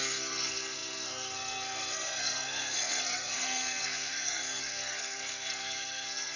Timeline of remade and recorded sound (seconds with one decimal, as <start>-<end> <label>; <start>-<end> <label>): 0.0-6.4 remade